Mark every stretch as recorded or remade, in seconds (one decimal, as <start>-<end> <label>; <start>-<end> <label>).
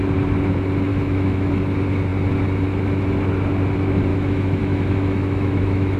0.0-0.9 recorded; 0.9-1.5 remade; 1.5-4.1 recorded; 4.1-6.0 remade